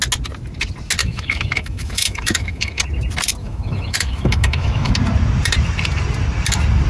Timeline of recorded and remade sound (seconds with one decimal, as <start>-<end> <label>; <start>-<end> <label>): 0.0-1.0 recorded; 1.0-2.8 remade; 2.8-3.4 recorded; 3.4-4.9 remade; 4.9-6.9 recorded